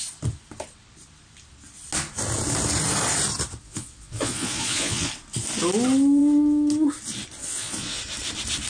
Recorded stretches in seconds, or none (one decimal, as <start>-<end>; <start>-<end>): 0.0-3.6; 5.1-7.4; 8.0-8.7